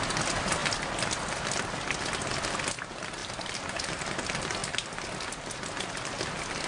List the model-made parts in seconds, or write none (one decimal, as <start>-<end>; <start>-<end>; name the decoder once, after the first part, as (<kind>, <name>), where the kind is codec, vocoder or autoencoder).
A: 3.2-4.0 (vocoder, BigVGAN v2)